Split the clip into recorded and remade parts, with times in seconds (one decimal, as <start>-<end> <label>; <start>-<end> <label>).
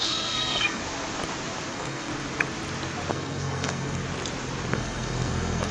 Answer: 0.0-0.8 remade; 0.8-1.7 recorded; 1.7-2.1 remade; 2.1-3.1 recorded; 3.1-4.0 remade; 4.0-4.7 recorded; 4.7-5.7 remade